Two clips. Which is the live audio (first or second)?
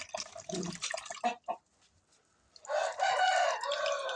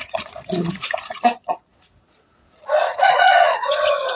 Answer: first